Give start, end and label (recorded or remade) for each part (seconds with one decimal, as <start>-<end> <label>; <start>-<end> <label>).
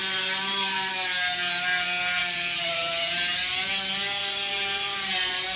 0.0-0.9 remade; 0.9-2.2 recorded; 2.2-3.7 remade; 3.7-4.2 recorded; 4.2-5.6 remade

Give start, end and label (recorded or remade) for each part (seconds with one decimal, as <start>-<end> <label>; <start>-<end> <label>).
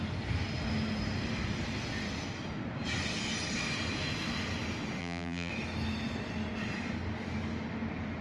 0.0-5.0 recorded; 5.0-5.5 remade; 5.5-8.2 recorded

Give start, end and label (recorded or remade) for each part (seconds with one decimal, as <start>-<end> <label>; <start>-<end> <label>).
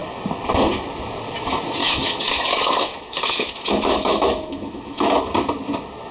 0.0-1.8 recorded; 1.8-5.2 remade; 5.2-6.1 recorded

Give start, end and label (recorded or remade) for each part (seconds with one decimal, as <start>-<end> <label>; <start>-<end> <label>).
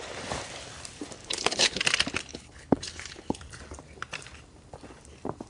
0.0-1.2 recorded; 1.2-1.8 remade; 1.8-2.3 recorded; 2.3-3.4 remade; 3.4-5.5 recorded